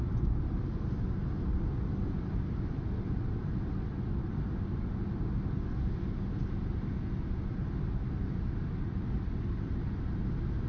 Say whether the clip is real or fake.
real